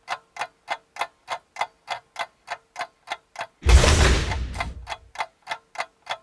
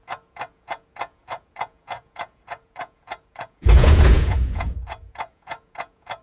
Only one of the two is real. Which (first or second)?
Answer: first